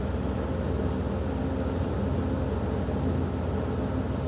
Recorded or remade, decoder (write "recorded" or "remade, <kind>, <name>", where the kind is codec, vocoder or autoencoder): recorded